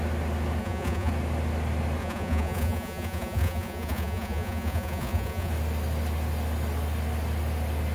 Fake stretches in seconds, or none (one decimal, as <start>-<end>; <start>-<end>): 0.6-1.1; 2.0-5.5